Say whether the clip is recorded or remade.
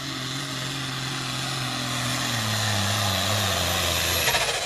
recorded